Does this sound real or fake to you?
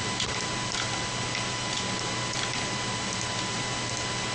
real